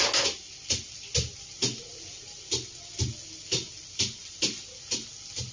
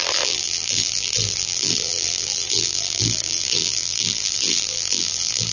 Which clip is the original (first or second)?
first